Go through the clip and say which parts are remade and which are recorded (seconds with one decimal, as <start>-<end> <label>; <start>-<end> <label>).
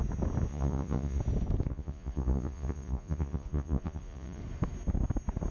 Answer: 0.0-0.5 recorded; 0.5-1.2 remade; 1.2-1.7 recorded; 1.7-4.4 remade; 4.4-5.5 recorded